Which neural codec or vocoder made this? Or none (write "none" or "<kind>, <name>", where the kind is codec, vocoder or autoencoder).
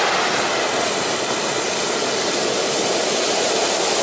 none